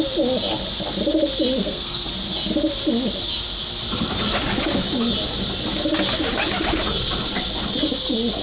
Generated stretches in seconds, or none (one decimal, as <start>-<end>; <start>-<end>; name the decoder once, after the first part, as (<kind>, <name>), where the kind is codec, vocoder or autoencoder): 1.6-2.1 (codec, SNAC)